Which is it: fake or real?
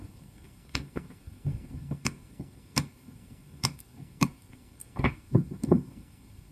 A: fake